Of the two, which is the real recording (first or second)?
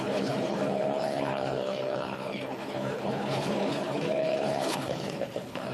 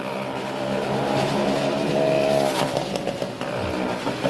second